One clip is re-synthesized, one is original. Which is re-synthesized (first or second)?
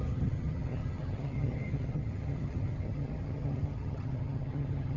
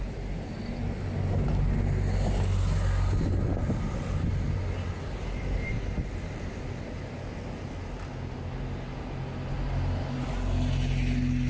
first